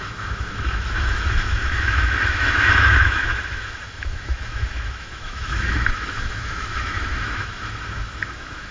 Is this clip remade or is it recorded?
remade